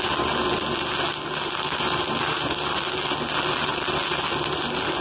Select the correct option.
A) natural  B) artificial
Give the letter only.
A